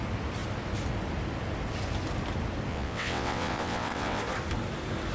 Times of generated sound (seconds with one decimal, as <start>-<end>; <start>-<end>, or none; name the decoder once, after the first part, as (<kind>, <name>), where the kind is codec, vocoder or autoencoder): 2.7-4.2 (vocoder, WaveNeXt)